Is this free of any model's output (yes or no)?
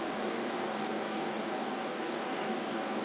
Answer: no